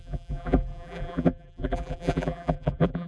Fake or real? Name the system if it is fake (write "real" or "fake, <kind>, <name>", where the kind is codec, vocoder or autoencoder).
fake, vocoder, BigVGAN v2